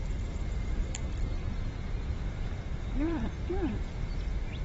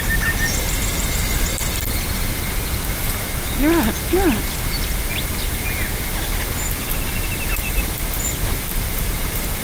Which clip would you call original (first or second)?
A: second